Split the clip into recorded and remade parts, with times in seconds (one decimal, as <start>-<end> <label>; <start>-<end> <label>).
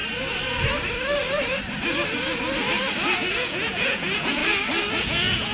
0.0-3.3 recorded; 3.3-4.4 remade; 4.4-5.0 recorded; 5.0-5.5 remade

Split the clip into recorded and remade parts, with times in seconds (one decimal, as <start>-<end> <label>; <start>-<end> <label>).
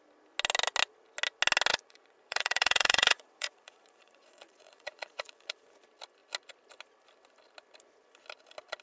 0.0-1.7 recorded; 1.7-5.7 remade; 5.7-8.8 recorded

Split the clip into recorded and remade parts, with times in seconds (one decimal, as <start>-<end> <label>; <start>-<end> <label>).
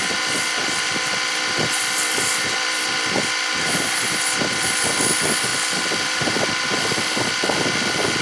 0.0-8.2 recorded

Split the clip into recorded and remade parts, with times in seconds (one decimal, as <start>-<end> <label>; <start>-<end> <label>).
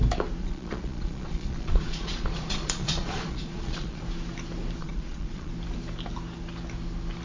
0.0-0.4 recorded; 0.4-4.0 remade; 4.0-4.8 recorded; 4.8-5.5 remade; 5.5-7.2 recorded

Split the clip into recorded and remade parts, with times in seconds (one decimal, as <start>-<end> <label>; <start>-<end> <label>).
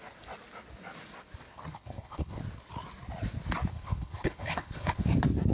0.0-1.7 recorded; 1.7-2.4 remade; 2.4-3.7 recorded; 3.7-5.0 remade; 5.0-5.5 recorded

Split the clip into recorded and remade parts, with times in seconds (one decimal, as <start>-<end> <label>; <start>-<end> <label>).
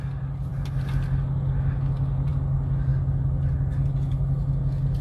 0.0-5.0 recorded